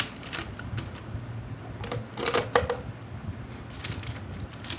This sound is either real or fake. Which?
real